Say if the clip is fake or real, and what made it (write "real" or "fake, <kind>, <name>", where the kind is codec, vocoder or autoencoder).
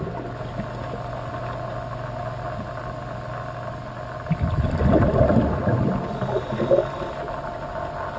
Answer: real